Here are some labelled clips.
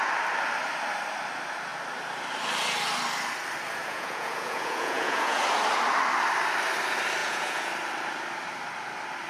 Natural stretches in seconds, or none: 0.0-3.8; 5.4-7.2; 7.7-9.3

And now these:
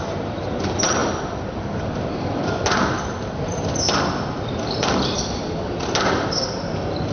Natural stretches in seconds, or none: none

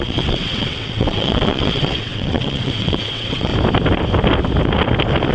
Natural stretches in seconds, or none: 3.5-5.3

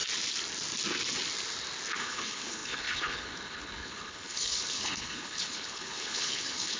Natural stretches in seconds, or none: 0.0-2.0

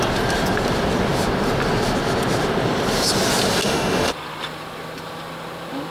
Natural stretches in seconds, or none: 0.0-3.6; 4.1-5.9

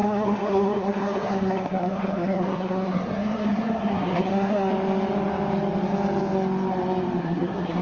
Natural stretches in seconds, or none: 4.7-7.2

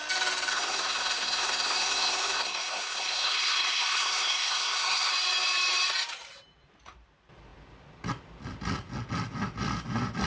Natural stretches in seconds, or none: 0.0-0.5; 5.1-10.3